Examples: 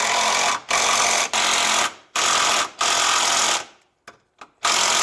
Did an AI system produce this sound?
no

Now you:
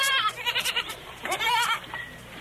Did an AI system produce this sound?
yes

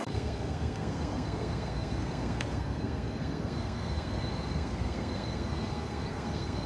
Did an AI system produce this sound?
yes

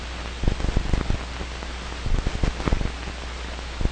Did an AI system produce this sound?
no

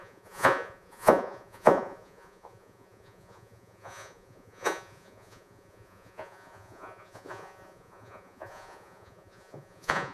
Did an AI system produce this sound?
yes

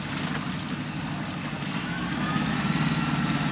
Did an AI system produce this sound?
no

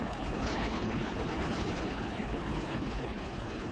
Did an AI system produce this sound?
yes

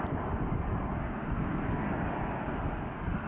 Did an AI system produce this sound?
no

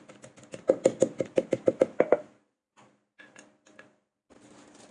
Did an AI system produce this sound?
no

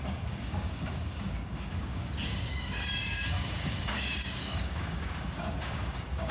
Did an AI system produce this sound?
yes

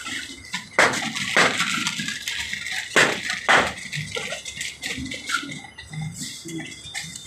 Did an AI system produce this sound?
no